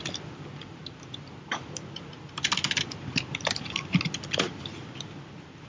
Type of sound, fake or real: real